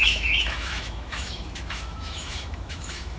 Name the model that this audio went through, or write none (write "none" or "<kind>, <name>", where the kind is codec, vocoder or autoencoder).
autoencoder, DAC-VAE